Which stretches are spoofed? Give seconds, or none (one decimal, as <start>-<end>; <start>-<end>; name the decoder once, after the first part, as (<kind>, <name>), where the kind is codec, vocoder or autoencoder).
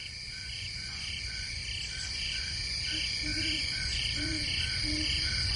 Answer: 0.0-1.6 (vocoder, Vocos); 2.1-5.6